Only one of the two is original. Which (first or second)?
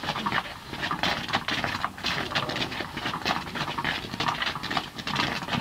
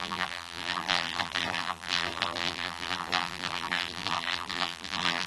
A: first